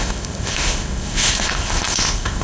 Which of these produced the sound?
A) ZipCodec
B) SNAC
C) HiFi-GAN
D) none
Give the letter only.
A